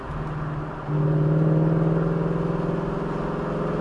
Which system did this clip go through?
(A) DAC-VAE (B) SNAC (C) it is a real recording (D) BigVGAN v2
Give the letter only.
C